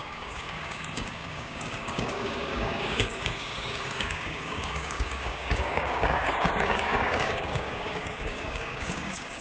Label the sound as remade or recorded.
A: remade